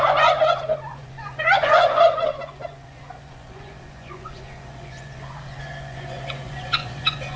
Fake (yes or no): yes